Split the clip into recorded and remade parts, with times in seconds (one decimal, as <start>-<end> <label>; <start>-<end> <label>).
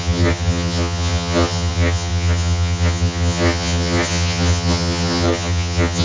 0.0-6.0 remade